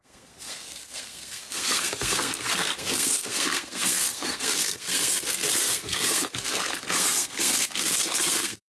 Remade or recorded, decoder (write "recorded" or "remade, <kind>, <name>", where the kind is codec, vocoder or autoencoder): remade, codec, SNAC